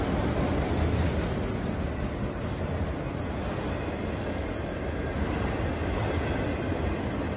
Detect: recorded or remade recorded